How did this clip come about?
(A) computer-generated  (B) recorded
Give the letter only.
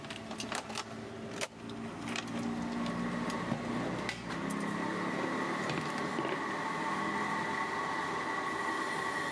B